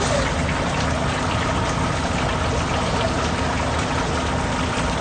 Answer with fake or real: real